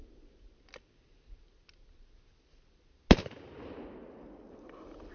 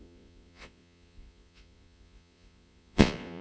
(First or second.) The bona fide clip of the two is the first